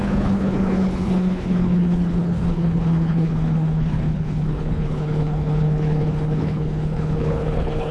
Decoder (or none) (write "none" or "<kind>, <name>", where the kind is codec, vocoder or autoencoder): codec, HILCodec